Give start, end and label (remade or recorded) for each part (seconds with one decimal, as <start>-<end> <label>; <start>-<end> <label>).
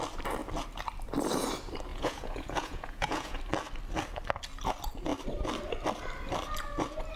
0.0-1.9 recorded; 1.9-3.4 remade; 3.4-7.2 recorded